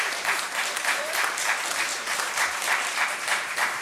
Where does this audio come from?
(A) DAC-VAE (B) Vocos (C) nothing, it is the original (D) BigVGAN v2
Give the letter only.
D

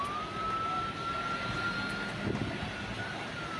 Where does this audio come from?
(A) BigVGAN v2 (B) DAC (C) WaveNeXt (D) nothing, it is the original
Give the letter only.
D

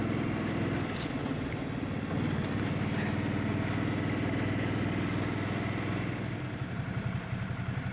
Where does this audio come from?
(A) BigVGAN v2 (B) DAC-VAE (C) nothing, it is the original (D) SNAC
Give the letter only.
C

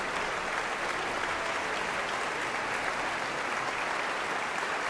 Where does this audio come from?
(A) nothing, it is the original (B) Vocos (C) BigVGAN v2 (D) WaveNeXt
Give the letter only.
A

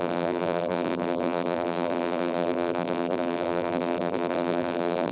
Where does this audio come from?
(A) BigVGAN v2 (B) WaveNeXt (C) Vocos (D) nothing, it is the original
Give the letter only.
A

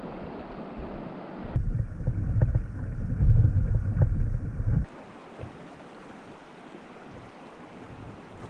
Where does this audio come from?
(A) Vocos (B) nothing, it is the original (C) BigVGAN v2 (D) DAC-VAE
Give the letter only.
B